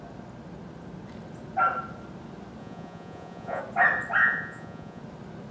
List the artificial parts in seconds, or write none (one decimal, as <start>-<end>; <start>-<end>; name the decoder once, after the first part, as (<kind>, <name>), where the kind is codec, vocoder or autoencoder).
2.6-3.6 (vocoder, Vocos); 4.2-5.0